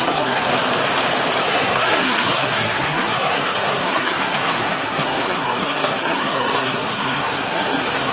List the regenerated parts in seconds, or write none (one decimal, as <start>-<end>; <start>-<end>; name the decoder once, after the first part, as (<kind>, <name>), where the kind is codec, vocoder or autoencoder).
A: 0.0-0.5 (codec, SNAC); 1.4-8.1